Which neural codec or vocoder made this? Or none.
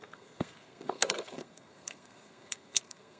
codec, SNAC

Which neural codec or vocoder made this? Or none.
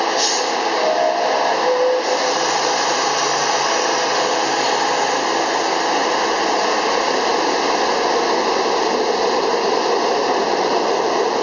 none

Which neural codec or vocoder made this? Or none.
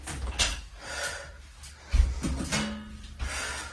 none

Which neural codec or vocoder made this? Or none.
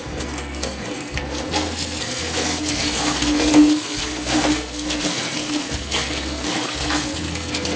codec, SNAC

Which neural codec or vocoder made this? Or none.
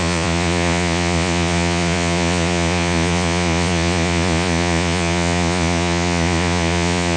vocoder, Vocos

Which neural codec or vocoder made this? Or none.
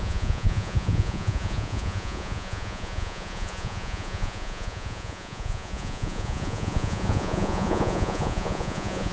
vocoder, Vocos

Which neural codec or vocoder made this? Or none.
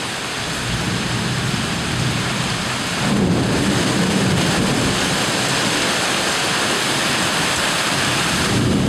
none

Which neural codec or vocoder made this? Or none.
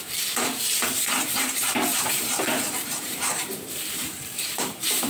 vocoder, BigVGAN v2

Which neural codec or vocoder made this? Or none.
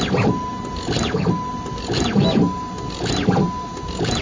none